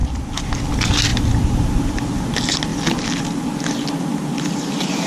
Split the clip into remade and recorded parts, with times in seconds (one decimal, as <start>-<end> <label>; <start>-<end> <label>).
0.0-0.7 remade; 0.7-1.1 recorded; 1.1-2.2 remade; 2.2-2.7 recorded; 2.7-3.2 remade; 3.2-5.1 recorded